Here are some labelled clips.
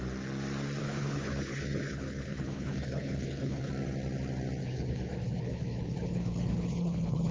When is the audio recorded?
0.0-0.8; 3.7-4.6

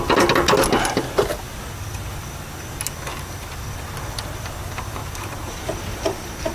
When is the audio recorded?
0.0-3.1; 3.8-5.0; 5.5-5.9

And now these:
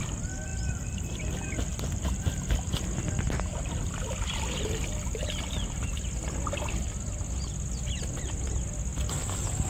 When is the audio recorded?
8.9-9.7

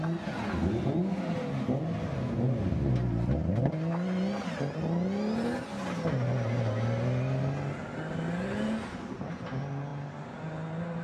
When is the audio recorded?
0.0-11.0

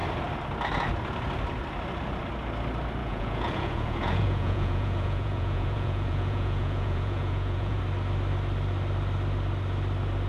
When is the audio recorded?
0.0-3.0; 7.8-10.3

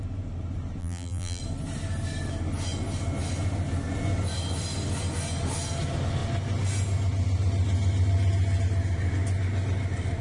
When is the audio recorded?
0.0-0.8; 1.4-10.2